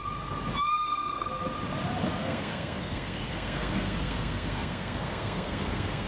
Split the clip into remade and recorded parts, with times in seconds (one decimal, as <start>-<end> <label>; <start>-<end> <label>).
0.0-0.7 recorded; 0.7-1.3 remade; 1.3-2.2 recorded; 2.2-6.1 remade